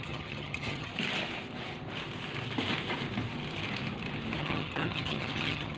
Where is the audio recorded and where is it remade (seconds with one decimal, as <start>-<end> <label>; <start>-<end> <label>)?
0.0-0.9 remade; 0.9-4.4 recorded; 4.4-5.8 remade